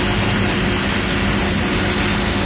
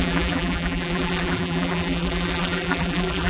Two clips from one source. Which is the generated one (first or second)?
second